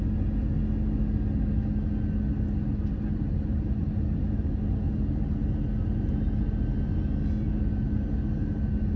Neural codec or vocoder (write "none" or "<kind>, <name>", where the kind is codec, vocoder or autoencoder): none